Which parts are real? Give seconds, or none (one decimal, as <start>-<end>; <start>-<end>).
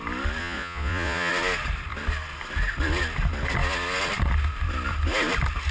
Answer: 0.0-0.4; 1.3-5.7